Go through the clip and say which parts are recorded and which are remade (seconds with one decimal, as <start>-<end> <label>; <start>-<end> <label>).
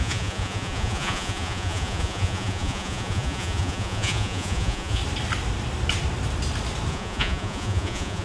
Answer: 0.0-5.0 remade; 5.0-6.9 recorded; 6.9-8.2 remade